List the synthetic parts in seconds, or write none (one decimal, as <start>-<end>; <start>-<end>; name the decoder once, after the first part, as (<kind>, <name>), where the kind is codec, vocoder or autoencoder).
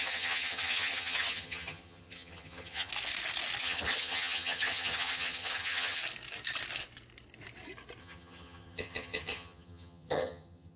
0.0-2.9 (vocoder, HiFi-GAN); 3.6-6.0; 8.0-10.8